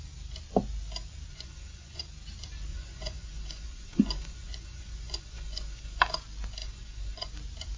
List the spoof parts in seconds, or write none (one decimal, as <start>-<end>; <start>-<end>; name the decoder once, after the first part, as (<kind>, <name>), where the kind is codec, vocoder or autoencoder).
1.3-2.0 (vocoder, Vocos); 2.7-6.0; 6.6-7.3